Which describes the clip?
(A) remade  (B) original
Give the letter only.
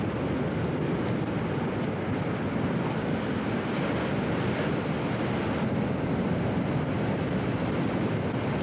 B